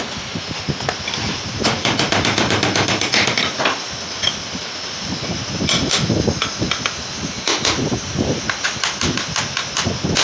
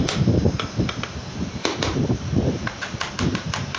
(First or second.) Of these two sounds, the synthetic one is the second